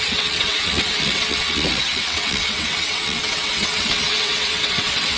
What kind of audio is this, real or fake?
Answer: fake